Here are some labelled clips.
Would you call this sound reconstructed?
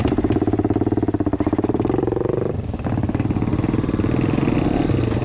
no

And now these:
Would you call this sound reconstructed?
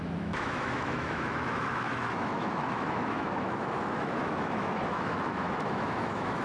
yes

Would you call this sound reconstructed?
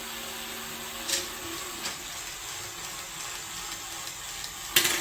no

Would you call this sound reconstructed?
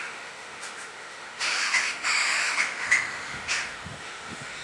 yes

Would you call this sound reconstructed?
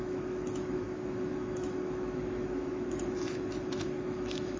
yes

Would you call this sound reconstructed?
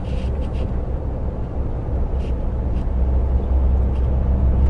no